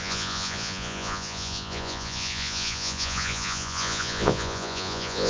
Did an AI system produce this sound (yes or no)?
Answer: yes